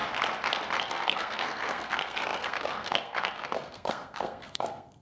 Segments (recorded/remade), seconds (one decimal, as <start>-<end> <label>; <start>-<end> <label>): 0.0-0.8 recorded; 0.8-5.0 remade